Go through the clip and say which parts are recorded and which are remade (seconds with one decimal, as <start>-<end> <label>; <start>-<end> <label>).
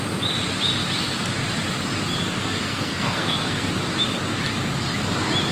0.0-2.4 recorded; 2.4-3.7 remade; 3.7-5.5 recorded